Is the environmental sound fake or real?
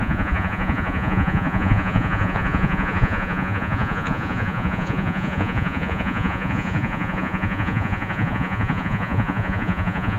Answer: fake